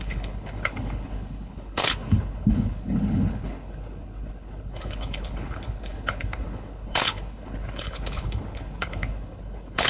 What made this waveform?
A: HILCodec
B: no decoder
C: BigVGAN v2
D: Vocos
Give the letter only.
A